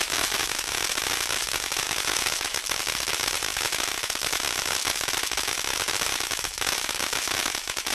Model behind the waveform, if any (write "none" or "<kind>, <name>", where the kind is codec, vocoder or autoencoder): autoencoder, DAC-VAE